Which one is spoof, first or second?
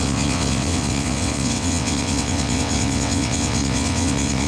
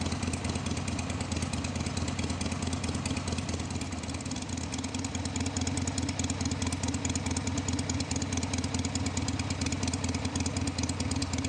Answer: first